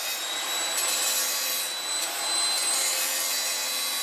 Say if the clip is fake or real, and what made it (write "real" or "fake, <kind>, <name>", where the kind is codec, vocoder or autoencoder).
fake, vocoder, BigVGAN v2